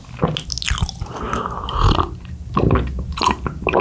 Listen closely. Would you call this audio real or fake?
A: real